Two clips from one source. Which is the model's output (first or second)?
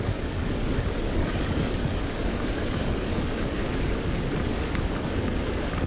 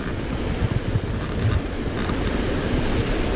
first